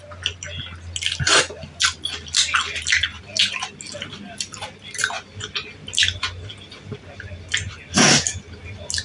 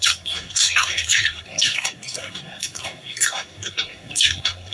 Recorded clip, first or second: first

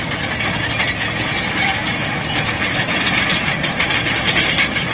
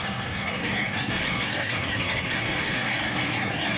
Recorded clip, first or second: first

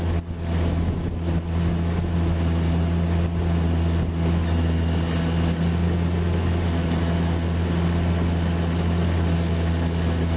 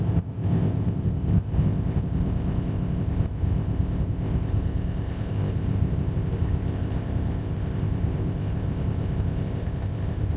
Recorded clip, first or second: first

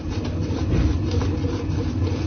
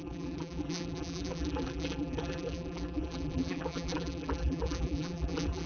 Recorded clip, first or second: first